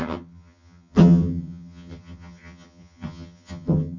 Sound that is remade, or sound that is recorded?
remade